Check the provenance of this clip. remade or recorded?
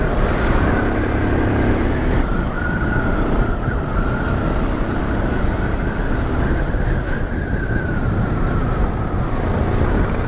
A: recorded